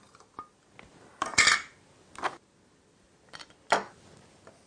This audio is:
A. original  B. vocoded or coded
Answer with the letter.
A